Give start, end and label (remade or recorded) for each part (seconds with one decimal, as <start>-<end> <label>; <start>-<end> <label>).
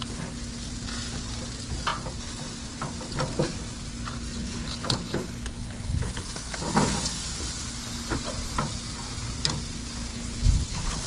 0.0-4.4 recorded; 4.4-6.2 remade; 6.2-10.1 recorded; 10.1-11.1 remade